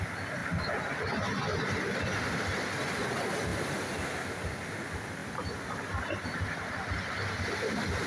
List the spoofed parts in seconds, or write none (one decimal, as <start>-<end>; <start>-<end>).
none